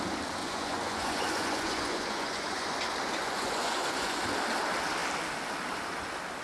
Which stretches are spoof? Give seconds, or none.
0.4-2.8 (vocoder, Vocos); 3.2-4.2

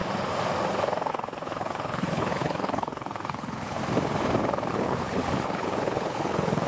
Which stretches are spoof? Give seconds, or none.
1.1-3.8 (codec, HILCodec); 4.7-6.7

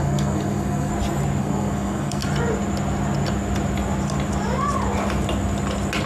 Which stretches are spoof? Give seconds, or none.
0.0-0.9 (codec, SNAC); 1.4-2.2

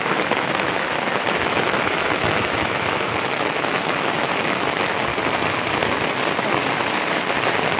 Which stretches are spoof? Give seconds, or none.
0.0-5.1 (autoencoder, DAC-VAE)